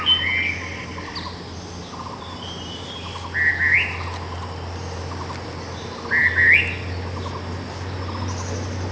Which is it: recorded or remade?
recorded